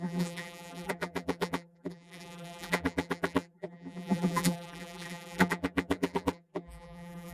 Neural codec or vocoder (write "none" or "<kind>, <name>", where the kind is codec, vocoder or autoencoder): vocoder, BigVGAN v2